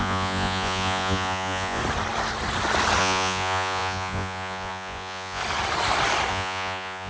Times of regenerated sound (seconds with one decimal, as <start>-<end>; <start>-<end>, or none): 0.0-1.8; 3.0-5.4; 6.3-7.1